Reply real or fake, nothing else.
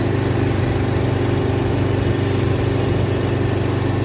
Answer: real